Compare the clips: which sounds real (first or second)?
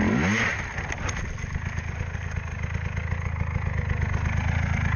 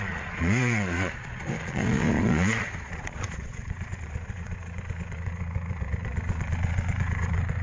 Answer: first